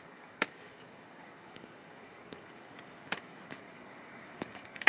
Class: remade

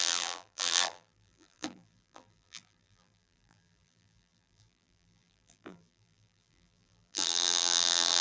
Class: remade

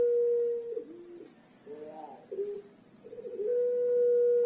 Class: recorded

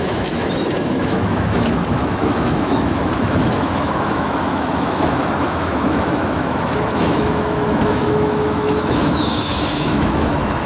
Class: remade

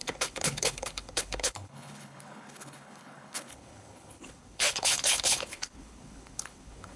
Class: remade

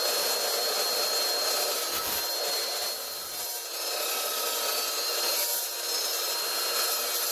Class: recorded